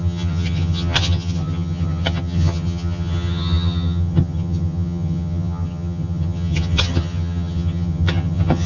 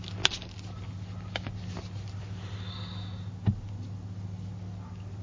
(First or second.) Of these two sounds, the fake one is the first